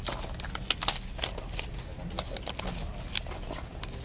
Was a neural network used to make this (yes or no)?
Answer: no